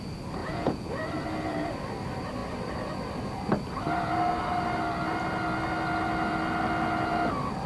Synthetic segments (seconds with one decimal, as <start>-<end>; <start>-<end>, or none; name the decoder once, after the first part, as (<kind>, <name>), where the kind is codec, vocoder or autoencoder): 0.4-0.9 (vocoder, Vocos)